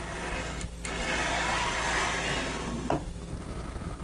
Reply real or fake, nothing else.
real